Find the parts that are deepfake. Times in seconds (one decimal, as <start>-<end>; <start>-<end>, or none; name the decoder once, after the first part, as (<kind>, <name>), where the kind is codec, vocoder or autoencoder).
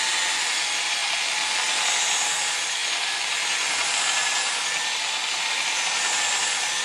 none